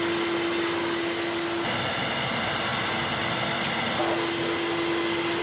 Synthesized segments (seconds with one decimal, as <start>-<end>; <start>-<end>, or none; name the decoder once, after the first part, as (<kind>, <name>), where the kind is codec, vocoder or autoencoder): none